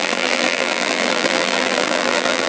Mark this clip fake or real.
fake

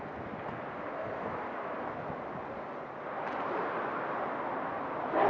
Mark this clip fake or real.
real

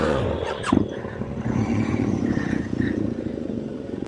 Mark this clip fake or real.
fake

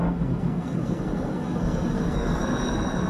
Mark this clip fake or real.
fake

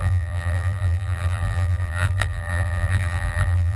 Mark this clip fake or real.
fake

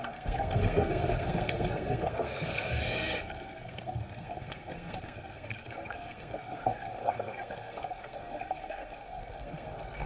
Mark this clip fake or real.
fake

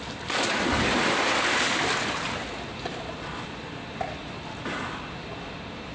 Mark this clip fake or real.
real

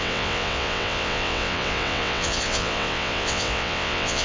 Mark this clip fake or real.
fake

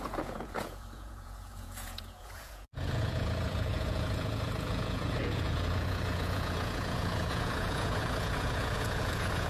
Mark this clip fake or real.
fake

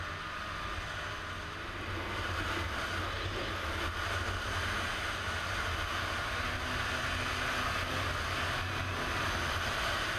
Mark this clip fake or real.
real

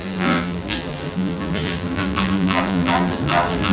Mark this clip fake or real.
fake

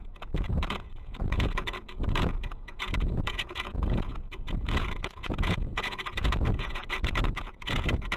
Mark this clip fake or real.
fake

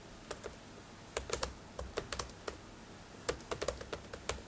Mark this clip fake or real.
real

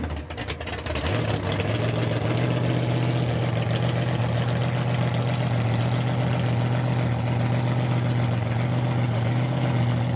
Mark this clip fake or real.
real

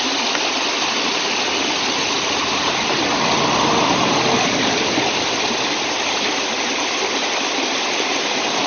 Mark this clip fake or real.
real